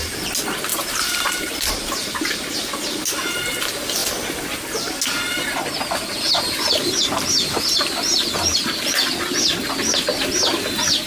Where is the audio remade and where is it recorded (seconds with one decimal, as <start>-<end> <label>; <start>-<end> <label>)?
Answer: 0.0-0.7 recorded; 0.7-1.7 remade; 1.7-7.0 recorded; 7.0-7.7 remade; 7.7-11.1 recorded